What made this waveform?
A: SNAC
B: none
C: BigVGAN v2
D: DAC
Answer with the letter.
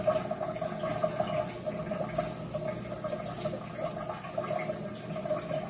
B